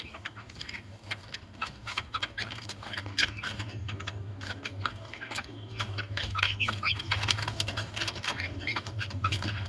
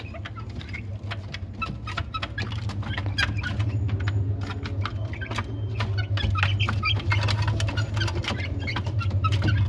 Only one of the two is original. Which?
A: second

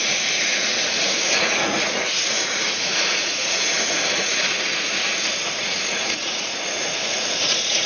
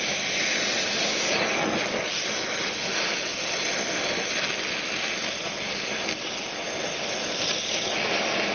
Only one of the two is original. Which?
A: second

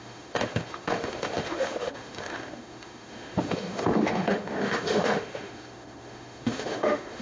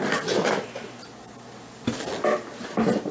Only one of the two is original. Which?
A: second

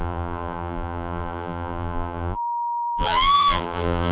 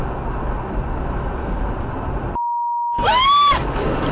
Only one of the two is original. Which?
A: second